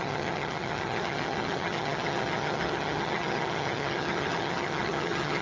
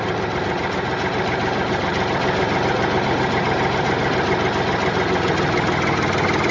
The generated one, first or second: first